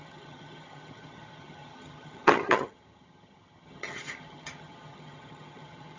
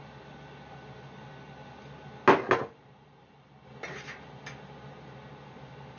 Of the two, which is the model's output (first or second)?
first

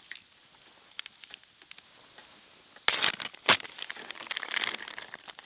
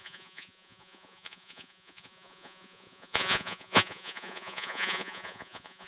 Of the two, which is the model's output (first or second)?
second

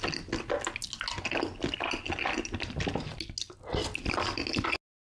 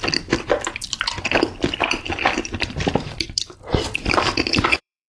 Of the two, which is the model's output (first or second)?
second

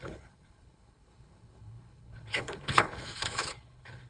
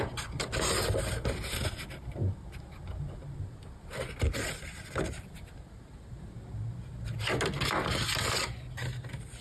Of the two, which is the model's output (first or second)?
first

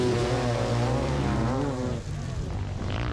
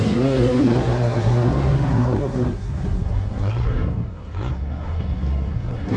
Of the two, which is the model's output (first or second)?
second